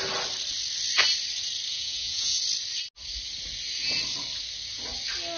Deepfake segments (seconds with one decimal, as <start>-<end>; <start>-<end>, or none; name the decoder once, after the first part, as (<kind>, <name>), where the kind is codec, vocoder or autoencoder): 1.7-2.4 (vocoder, Vocos)

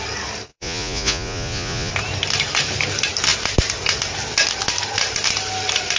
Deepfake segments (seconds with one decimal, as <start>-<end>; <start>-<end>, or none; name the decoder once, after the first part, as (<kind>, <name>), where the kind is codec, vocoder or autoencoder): 0.5-1.9 (vocoder, Vocos)

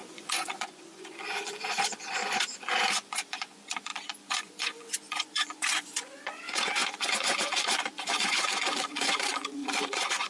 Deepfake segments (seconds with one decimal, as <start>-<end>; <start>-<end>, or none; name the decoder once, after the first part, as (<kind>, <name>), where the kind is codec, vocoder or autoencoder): 0.0-10.3 (vocoder, Vocos)

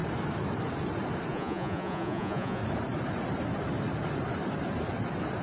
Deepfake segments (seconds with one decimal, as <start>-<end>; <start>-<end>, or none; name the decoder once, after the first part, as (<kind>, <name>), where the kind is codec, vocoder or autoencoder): 1.3-2.6 (vocoder, Vocos)

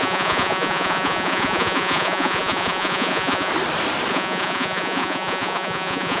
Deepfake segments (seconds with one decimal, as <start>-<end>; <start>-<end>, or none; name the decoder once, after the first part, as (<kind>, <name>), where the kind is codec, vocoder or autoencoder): 0.0-3.5 (vocoder, Vocos); 4.1-6.2

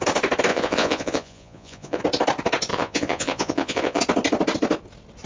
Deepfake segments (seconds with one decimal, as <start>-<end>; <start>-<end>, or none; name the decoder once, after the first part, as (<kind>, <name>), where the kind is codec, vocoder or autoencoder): 0.5-2.0 (vocoder, Vocos); 2.7-4.0

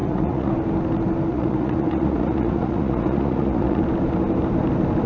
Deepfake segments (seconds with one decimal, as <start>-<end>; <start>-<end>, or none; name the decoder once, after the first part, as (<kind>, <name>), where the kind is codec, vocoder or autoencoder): 0.0-0.5 (vocoder, Vocos); 1.3-3.8

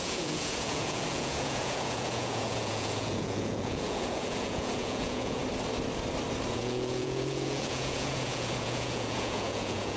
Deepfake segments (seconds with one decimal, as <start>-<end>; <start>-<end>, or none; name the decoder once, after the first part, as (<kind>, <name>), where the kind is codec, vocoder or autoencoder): 0.0-5.4 (vocoder, Vocos); 6.5-10.0